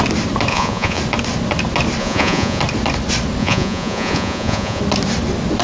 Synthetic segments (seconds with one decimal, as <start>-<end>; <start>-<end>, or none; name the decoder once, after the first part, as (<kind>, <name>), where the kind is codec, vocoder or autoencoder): 0.5-1.0 (vocoder, Vocos); 2.0-2.6; 3.4-4.8